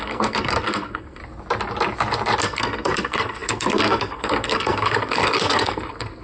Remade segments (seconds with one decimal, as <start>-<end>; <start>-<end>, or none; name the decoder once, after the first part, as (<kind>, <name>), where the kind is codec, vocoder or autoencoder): 0.0-1.2 (codec, SNAC); 2.4-6.2